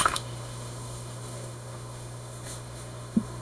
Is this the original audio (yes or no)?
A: no